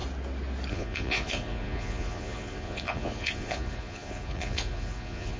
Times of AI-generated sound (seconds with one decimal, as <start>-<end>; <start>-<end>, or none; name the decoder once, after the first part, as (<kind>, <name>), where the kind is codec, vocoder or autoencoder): 0.7-5.4 (vocoder, Vocos)